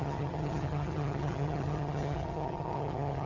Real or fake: fake